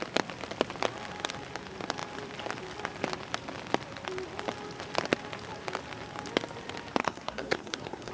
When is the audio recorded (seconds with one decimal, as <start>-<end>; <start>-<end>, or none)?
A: 0.0-7.0